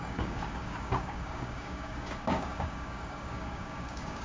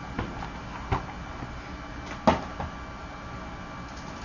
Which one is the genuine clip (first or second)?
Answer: second